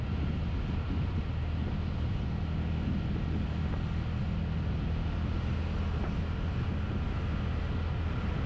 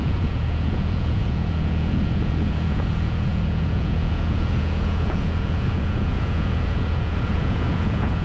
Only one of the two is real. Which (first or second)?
first